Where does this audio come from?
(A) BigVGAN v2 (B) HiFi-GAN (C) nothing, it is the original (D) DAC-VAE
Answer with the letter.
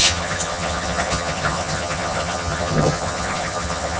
B